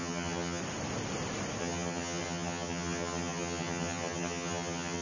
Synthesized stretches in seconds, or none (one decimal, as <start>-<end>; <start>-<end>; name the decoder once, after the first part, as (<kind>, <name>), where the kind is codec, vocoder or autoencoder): 0.0-0.6 (vocoder, HiFi-GAN); 1.6-5.0